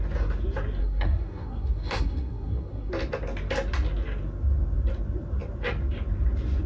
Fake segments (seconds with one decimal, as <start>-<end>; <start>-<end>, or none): 0.8-2.9